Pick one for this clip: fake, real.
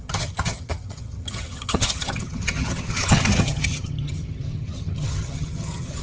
fake